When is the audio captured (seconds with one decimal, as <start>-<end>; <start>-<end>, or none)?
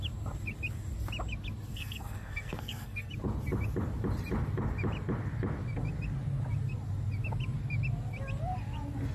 0.0-1.7; 3.1-9.1